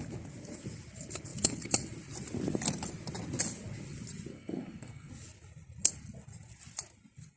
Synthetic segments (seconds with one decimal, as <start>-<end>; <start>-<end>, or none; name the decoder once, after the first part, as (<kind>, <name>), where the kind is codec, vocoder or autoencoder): 4.3-5.1 (codec, SNAC)